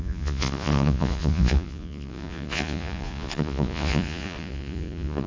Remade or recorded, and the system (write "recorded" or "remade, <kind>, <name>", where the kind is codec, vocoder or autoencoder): remade, vocoder, Vocos